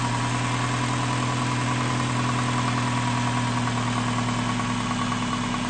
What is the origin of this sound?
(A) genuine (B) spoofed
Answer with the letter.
A